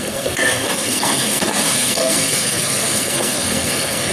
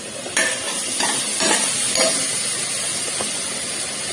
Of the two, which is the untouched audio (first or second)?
second